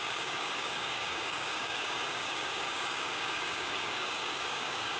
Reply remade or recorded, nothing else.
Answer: remade